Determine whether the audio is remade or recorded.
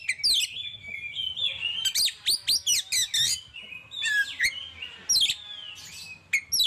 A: recorded